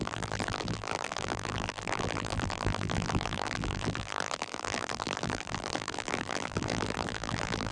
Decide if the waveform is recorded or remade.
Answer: remade